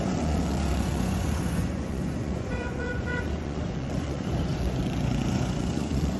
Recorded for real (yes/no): no